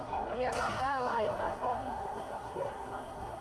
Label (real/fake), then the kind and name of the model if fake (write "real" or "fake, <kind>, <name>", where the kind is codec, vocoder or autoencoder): fake, codec, SNAC